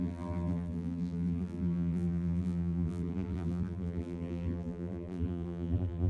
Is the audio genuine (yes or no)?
no